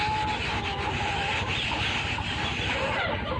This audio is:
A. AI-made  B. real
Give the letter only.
B